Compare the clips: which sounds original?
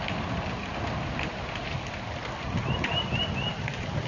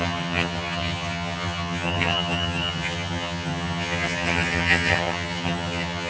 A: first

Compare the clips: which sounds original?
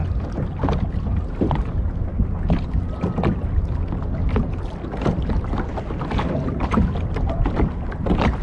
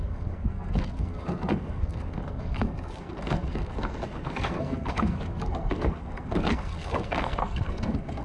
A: first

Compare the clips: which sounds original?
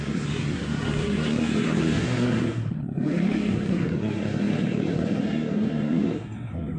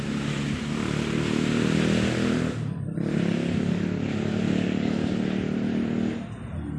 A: second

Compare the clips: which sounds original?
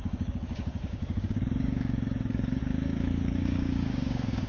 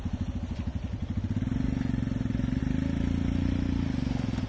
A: second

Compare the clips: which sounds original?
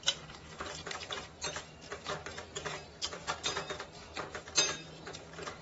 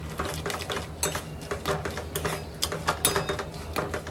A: second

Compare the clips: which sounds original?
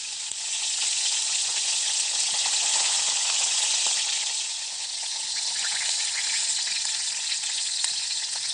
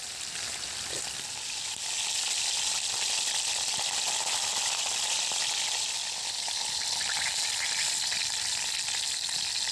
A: second